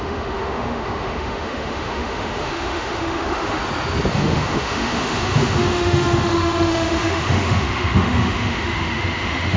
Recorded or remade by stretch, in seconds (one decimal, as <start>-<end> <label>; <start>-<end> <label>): 0.0-3.6 remade; 3.6-4.1 recorded; 4.1-9.6 remade